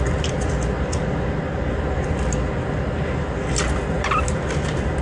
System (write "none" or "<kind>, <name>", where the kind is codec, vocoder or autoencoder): none